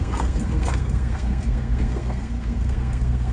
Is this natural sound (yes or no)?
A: no